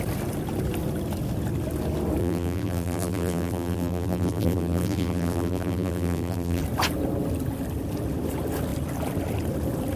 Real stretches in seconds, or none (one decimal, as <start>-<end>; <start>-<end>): 0.0-2.2; 6.6-10.0